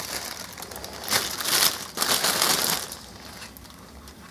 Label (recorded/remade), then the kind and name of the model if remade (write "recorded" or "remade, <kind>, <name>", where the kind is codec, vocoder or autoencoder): recorded